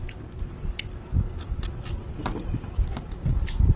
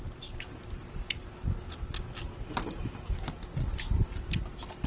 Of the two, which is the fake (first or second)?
first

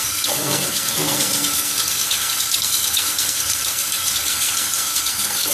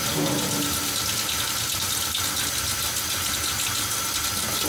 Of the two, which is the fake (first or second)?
first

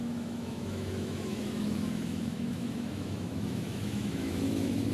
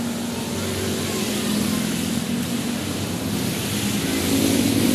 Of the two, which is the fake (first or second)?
first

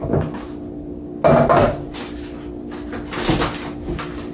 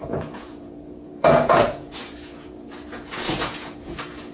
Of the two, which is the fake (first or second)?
second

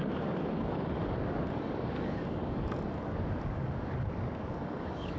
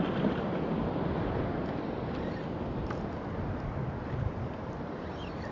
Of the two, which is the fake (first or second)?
first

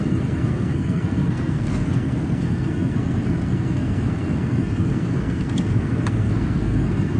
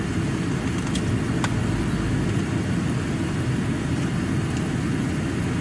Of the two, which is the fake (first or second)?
first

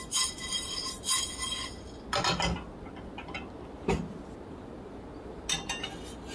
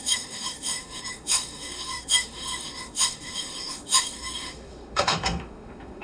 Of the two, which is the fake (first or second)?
second